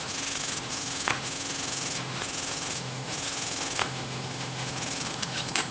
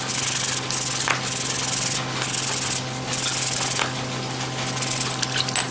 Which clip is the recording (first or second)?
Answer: second